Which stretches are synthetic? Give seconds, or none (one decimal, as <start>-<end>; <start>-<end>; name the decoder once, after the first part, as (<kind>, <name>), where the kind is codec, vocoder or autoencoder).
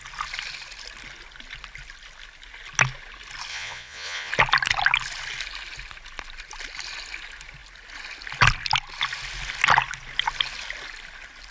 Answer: 3.5-4.3 (vocoder, Vocos)